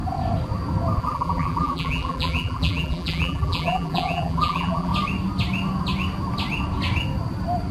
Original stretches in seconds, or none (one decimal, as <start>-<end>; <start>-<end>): 0.0-1.0; 4.9-7.7